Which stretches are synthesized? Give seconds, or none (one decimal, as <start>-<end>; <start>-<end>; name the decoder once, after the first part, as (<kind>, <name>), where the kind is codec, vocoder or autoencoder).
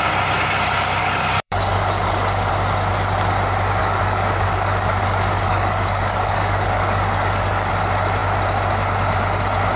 1.0-2.5 (codec, DAC); 3.8-7.7